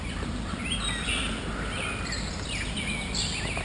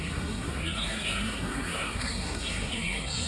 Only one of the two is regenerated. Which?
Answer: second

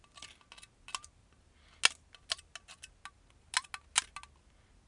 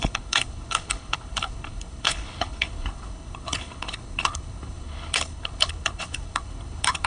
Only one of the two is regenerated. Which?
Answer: second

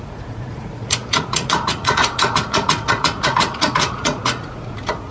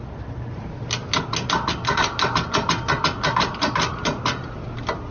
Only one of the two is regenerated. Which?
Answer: first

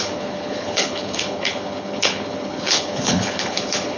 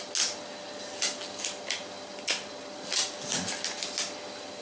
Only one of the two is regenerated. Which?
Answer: first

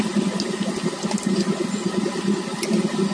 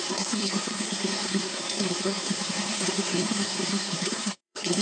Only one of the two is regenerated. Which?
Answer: second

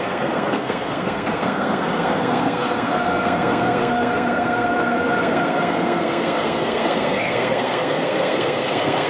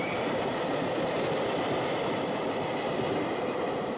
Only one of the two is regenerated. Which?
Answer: first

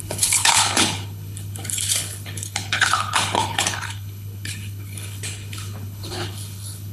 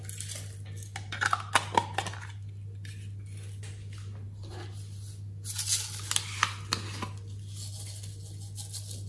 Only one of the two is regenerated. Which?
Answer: first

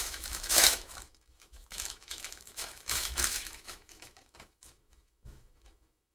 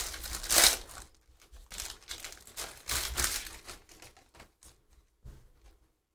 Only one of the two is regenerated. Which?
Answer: first